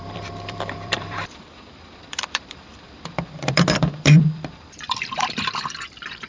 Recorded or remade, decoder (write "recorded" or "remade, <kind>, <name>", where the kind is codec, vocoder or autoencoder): remade, vocoder, BigVGAN v2